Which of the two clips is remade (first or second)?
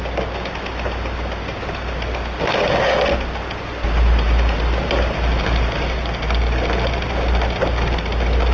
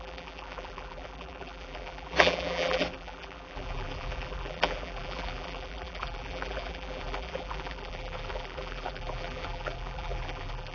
second